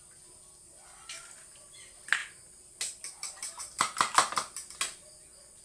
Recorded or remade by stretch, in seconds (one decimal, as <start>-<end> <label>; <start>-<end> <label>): 0.0-5.6 recorded